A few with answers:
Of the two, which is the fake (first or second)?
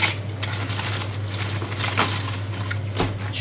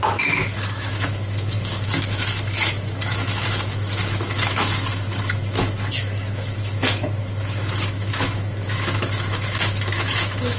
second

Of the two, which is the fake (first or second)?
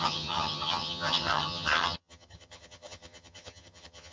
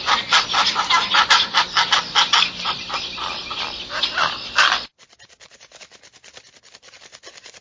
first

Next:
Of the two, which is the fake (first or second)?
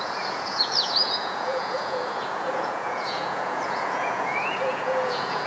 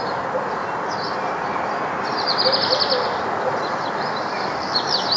first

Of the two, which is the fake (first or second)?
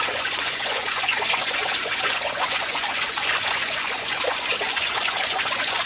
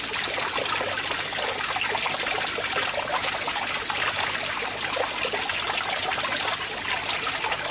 first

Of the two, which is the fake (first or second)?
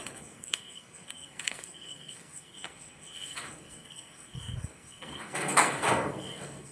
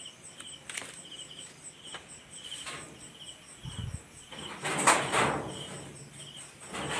first